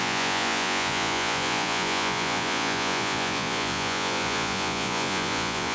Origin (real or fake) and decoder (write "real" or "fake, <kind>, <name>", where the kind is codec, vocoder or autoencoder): fake, vocoder, Vocos